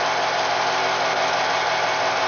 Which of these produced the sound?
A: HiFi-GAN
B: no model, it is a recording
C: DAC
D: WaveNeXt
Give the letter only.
B